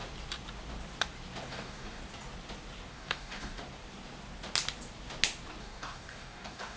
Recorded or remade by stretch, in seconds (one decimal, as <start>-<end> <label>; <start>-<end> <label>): 0.0-1.5 recorded; 1.5-2.0 remade; 2.0-2.9 recorded; 2.9-3.6 remade; 3.6-5.6 recorded; 5.6-6.8 remade

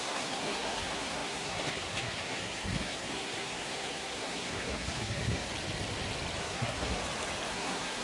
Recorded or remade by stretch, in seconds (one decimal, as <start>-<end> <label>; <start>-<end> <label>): 0.0-5.5 remade; 5.5-6.4 recorded; 6.4-7.0 remade; 7.0-7.5 recorded; 7.5-8.0 remade

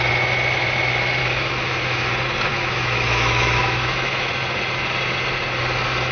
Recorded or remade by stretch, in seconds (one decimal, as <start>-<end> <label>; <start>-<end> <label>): 0.0-1.2 recorded; 1.2-2.1 remade; 2.1-2.5 recorded; 2.5-4.3 remade; 4.3-6.1 recorded

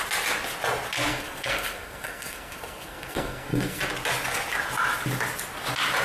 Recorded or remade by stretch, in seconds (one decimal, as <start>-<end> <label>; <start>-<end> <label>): 0.0-1.1 recorded; 1.1-3.8 remade; 3.8-6.0 recorded

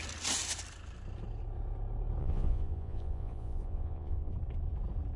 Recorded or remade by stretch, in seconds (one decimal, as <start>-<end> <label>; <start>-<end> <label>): 0.0-2.2 recorded; 2.2-4.3 remade; 4.3-5.2 recorded